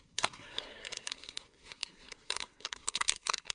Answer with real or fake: fake